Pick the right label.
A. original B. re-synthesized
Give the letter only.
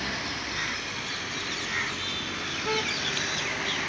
A